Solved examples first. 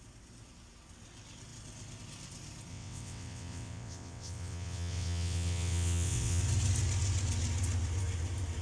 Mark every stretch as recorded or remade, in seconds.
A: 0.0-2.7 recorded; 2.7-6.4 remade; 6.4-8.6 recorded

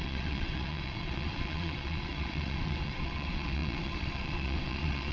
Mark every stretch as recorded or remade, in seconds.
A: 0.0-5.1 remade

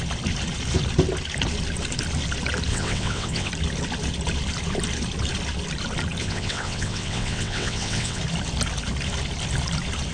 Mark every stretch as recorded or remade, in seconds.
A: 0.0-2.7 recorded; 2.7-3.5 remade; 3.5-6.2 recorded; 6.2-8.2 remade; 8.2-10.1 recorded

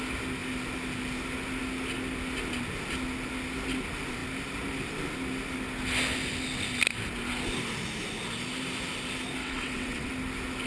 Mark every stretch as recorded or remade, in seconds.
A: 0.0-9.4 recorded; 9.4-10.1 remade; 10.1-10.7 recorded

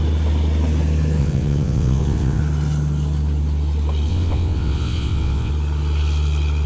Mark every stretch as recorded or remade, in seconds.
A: 0.0-1.2 recorded; 1.2-2.4 remade; 2.4-4.1 recorded; 4.1-5.5 remade; 5.5-6.7 recorded

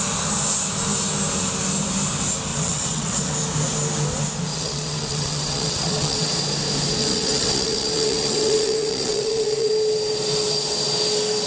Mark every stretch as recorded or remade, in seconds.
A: 0.0-2.5 recorded; 2.5-3.2 remade; 3.2-4.5 recorded; 4.5-6.3 remade; 6.3-7.0 recorded; 7.0-9.7 remade; 9.7-11.5 recorded

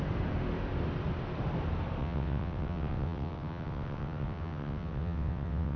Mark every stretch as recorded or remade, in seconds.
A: 0.0-2.0 recorded; 2.0-5.8 remade

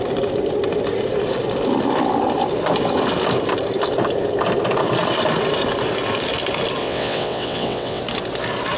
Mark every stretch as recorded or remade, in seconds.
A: 0.0-6.8 recorded; 6.8-8.0 remade; 8.0-8.8 recorded